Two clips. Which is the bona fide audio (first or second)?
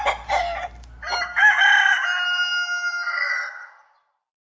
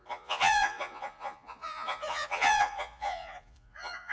first